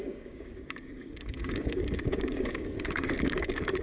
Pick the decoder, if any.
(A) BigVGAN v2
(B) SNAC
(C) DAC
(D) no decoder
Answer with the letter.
C